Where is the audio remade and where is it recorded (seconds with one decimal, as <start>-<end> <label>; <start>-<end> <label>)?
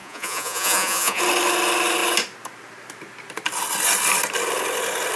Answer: 0.0-1.2 remade; 1.2-5.2 recorded